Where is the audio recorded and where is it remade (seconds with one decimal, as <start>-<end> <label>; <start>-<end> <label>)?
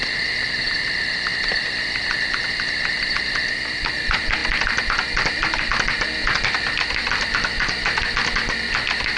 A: 0.0-9.2 recorded